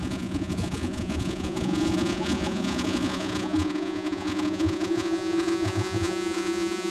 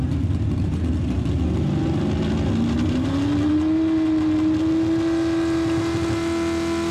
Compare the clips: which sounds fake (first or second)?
first